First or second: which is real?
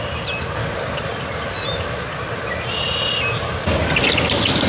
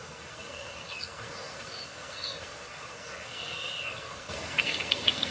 first